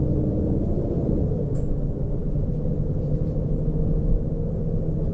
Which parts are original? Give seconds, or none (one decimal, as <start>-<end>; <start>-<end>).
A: 0.0-5.1